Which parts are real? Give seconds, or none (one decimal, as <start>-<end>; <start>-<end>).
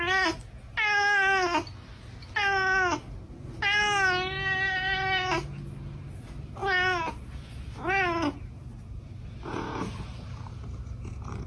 0.0-11.5